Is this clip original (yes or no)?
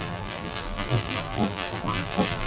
no